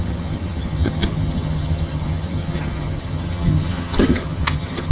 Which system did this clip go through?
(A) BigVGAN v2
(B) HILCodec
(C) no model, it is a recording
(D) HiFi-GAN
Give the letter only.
D